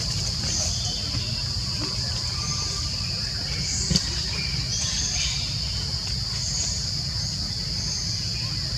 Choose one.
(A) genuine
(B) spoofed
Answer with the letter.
A